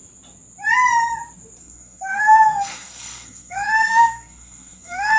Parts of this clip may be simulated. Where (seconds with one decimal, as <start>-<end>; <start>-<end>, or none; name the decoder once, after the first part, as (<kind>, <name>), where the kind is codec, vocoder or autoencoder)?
1.6-5.2 (codec, SNAC)